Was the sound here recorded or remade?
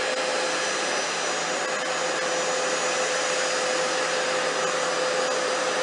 recorded